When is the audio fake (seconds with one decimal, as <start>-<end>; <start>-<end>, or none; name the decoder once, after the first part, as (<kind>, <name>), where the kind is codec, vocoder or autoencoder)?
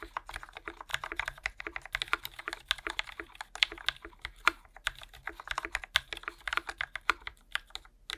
0.9-1.6 (vocoder, BigVGAN v2)